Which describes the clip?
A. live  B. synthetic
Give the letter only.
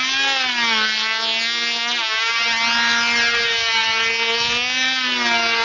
A